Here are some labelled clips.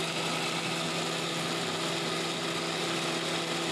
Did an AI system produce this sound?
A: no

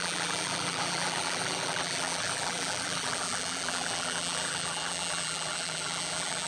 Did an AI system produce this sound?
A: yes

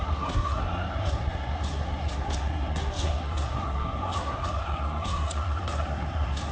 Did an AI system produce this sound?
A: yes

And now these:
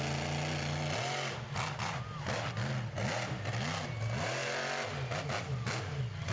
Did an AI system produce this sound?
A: no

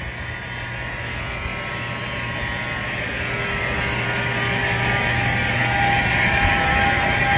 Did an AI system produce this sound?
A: no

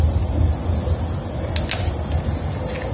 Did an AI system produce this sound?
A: no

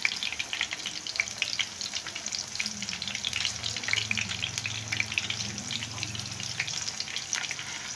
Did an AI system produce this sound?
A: no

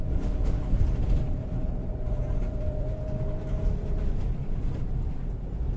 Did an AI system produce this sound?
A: yes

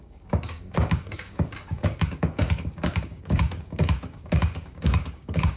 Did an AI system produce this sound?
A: yes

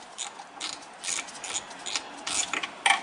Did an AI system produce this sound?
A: no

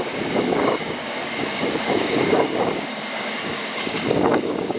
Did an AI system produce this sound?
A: yes